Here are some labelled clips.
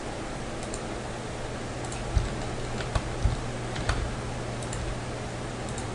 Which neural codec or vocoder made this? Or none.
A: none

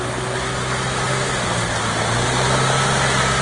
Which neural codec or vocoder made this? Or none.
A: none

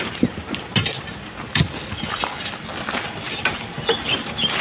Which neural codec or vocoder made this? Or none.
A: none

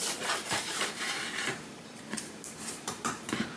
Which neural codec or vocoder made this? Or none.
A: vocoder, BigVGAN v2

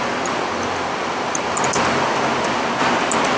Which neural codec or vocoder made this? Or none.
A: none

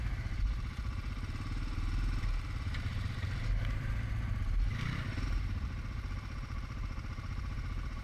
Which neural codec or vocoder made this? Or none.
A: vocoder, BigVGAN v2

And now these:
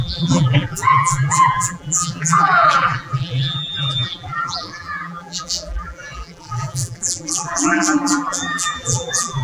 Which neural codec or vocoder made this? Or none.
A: vocoder, BigVGAN v2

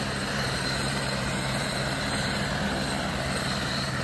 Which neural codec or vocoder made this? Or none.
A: vocoder, BigVGAN v2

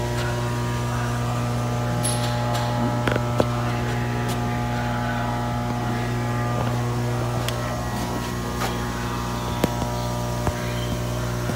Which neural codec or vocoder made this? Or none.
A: none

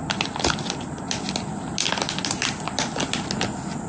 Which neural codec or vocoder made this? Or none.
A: vocoder, BigVGAN v2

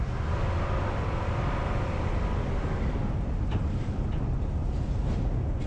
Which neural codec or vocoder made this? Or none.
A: none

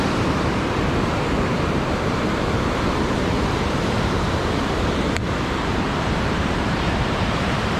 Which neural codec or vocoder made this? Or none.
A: vocoder, BigVGAN v2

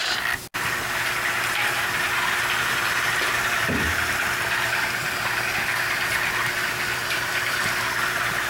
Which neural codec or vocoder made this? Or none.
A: none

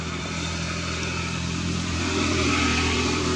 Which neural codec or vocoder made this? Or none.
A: vocoder, BigVGAN v2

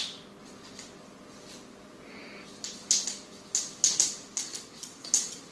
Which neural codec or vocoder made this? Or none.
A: none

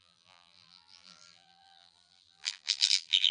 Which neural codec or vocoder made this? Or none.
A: vocoder, BigVGAN v2